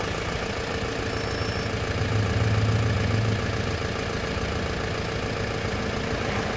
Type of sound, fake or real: real